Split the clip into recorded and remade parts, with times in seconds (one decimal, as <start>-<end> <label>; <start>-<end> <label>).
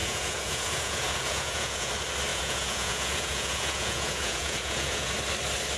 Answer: 0.0-1.9 remade; 1.9-2.3 recorded; 2.3-5.1 remade; 5.1-5.8 recorded